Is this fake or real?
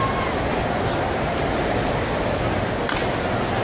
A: real